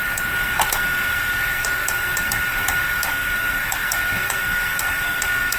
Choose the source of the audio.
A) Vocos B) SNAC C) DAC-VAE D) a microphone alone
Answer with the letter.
B